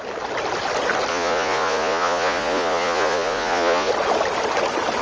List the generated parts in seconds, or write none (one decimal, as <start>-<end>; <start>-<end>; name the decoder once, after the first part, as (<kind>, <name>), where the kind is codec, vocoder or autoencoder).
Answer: 1.1-3.9 (vocoder, Vocos)